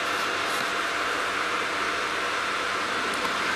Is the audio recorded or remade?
remade